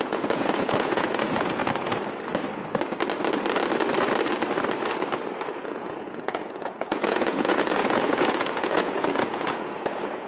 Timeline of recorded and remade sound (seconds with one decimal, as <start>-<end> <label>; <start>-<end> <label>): 0.0-1.6 remade; 1.6-5.6 recorded; 5.6-10.3 remade

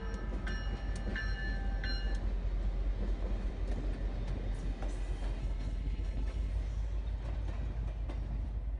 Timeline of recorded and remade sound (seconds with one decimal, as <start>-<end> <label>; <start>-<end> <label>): 0.0-5.4 recorded; 5.4-6.5 remade; 6.5-8.8 recorded